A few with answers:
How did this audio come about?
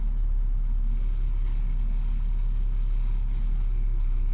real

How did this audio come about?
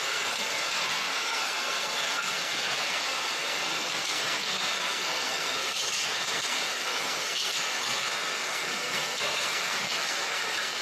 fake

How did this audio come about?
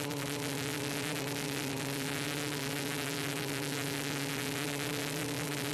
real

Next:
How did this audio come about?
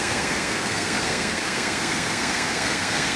fake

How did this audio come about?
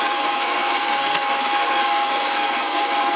fake